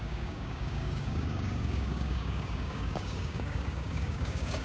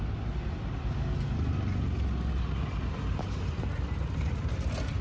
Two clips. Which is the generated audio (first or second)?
first